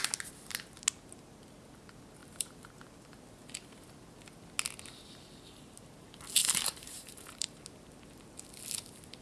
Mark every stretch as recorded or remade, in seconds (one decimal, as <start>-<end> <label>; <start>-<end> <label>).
0.0-2.2 recorded; 2.2-2.7 remade; 2.7-6.4 recorded; 6.4-7.6 remade; 7.6-9.2 recorded

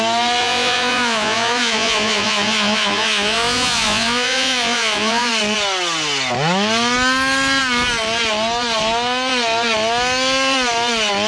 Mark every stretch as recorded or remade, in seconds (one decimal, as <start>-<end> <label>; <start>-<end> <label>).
0.0-0.4 recorded; 0.4-5.3 remade; 5.3-11.3 recorded

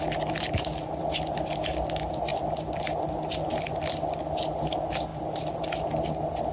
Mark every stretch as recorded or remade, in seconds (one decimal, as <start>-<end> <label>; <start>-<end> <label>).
0.0-6.5 recorded

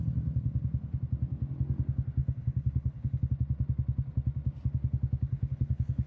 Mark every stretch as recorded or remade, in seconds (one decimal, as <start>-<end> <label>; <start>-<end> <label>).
0.0-2.2 recorded; 2.2-3.3 remade; 3.3-5.3 recorded; 5.3-6.1 remade

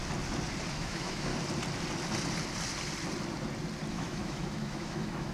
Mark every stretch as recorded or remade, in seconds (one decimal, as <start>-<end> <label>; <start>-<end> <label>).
0.0-0.7 recorded; 0.7-1.3 remade; 1.3-3.9 recorded; 3.9-5.3 remade

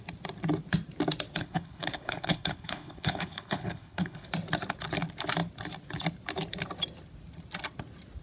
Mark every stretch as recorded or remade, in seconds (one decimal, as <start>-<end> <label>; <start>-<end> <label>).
0.0-1.4 recorded; 1.4-4.3 remade; 4.3-8.2 recorded